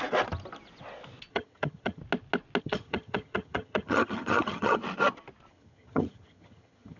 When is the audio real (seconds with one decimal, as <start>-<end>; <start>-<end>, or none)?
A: 0.0-1.3; 2.0-2.6; 4.8-5.5